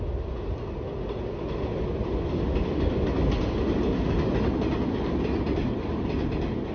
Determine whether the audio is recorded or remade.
recorded